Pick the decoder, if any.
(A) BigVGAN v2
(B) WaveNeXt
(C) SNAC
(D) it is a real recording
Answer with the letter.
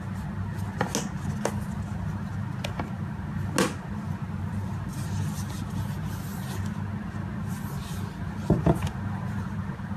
D